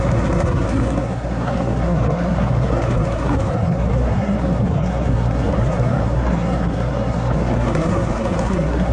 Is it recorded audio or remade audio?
remade